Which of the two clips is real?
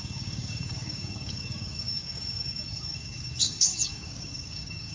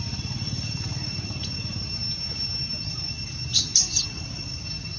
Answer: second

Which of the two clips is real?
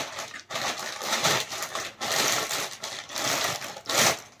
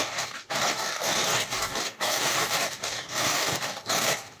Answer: first